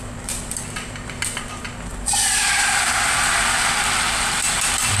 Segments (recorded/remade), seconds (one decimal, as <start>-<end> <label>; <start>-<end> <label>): 0.0-5.0 recorded